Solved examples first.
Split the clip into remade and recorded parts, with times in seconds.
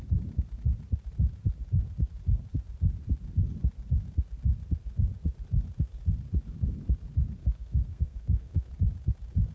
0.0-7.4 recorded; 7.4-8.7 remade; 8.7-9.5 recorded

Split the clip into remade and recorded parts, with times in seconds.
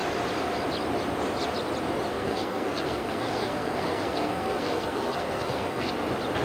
0.0-2.1 recorded; 2.1-5.9 remade; 5.9-6.4 recorded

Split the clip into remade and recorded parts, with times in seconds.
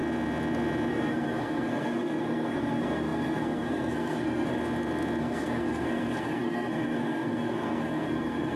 0.0-0.9 recorded; 0.9-4.6 remade; 4.6-5.2 recorded; 5.2-8.6 remade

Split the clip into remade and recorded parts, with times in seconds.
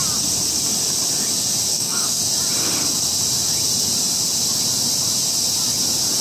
0.0-1.7 recorded; 1.7-2.2 remade; 2.2-6.2 recorded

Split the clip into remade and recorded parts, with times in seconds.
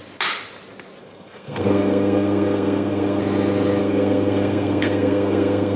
0.0-1.0 recorded; 1.0-3.2 remade; 3.2-3.8 recorded; 3.8-5.8 remade